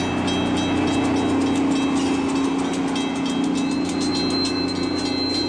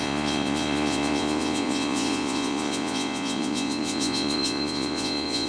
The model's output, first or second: second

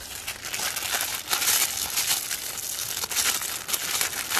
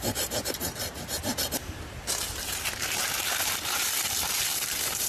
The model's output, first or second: second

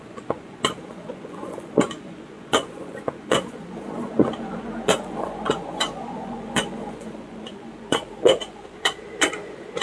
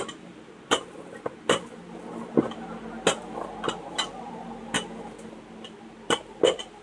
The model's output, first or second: first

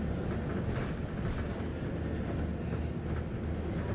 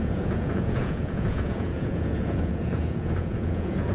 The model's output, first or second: second